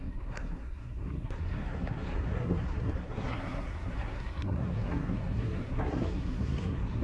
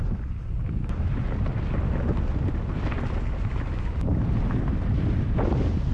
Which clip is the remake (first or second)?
first